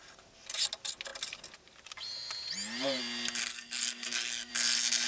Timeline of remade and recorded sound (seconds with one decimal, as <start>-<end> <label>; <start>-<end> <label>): 0.0-3.4 recorded; 3.4-4.5 remade; 4.5-5.1 recorded